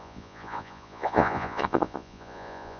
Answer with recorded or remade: remade